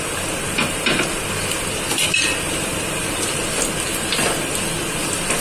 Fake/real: real